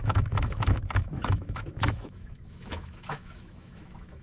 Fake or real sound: fake